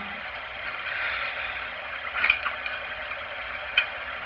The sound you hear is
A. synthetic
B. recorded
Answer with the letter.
A